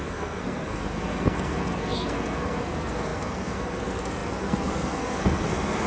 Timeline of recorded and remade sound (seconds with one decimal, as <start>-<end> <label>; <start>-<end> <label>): 0.0-5.9 remade

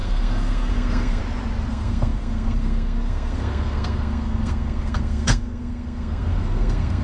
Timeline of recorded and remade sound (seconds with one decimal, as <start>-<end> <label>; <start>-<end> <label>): 0.0-1.2 remade; 1.2-1.7 recorded; 1.7-7.0 remade

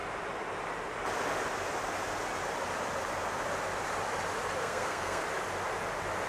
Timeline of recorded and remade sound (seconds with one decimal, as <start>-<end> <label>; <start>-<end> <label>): 0.0-4.6 recorded; 4.6-5.2 remade; 5.2-6.3 recorded

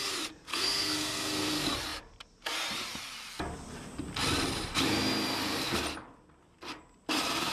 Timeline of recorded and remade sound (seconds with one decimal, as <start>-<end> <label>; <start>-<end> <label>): 0.0-0.5 recorded; 0.5-1.5 remade; 1.5-7.5 recorded